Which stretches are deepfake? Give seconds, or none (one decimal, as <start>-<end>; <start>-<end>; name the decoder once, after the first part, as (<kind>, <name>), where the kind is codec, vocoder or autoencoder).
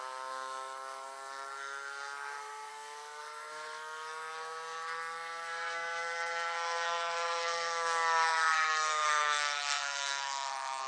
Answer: 0.0-10.9 (codec, SNAC)